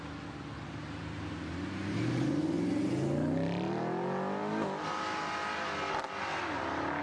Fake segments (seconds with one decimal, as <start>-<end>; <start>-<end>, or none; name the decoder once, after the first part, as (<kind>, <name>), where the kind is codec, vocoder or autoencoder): none